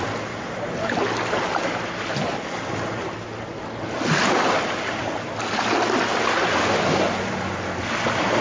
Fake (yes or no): no